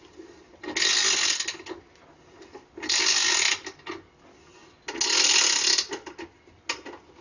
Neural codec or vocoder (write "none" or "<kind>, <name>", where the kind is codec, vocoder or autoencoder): none